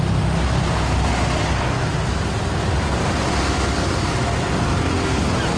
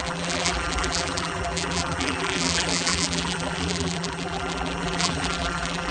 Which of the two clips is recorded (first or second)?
first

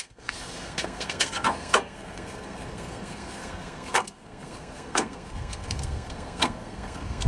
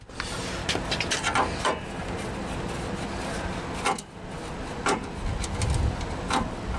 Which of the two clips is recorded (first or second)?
second